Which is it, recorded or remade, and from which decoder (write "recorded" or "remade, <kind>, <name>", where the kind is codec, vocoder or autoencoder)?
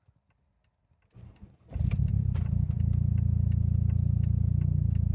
recorded